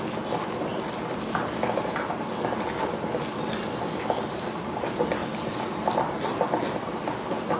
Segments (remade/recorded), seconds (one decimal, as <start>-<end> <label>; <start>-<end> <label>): 0.0-7.6 recorded